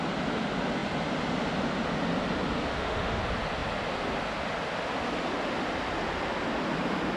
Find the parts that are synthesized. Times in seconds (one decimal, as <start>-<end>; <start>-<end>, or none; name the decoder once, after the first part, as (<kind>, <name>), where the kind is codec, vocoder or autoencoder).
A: 2.7-3.2 (autoencoder, DAC-VAE)